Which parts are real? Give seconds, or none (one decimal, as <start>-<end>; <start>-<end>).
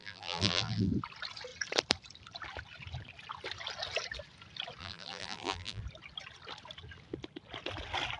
0.9-4.8; 5.8-8.2